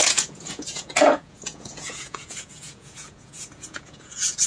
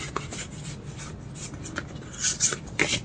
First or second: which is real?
second